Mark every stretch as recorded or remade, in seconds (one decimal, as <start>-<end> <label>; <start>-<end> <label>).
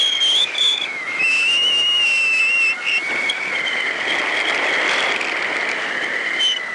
0.0-0.4 recorded; 0.4-2.4 remade; 2.4-6.7 recorded